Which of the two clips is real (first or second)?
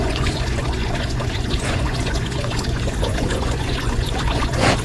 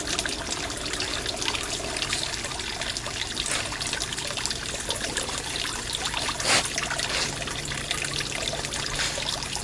second